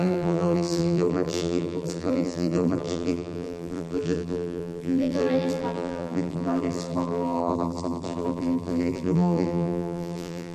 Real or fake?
fake